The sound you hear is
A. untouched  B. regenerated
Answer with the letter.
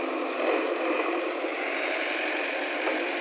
A